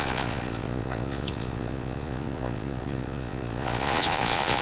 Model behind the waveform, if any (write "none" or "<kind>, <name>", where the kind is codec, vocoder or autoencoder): vocoder, Vocos